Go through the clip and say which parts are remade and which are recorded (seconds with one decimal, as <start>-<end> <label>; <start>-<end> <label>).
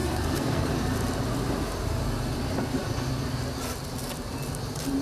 0.0-0.7 remade; 0.7-5.0 recorded